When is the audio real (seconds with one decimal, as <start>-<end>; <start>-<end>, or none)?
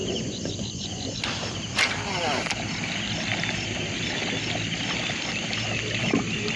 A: 1.2-6.6